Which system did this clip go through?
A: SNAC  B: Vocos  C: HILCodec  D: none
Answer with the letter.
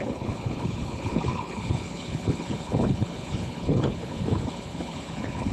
C